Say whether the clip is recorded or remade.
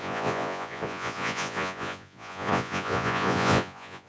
remade